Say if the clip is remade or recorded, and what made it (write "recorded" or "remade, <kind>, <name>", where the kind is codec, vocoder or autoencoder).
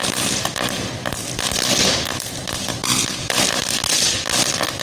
recorded